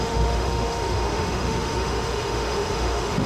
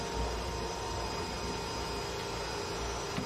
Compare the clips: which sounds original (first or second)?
second